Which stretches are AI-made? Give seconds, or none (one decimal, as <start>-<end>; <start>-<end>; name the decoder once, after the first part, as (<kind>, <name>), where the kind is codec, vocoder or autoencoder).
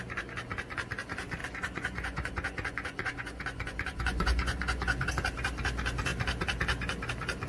1.4-5.1 (vocoder, Vocos)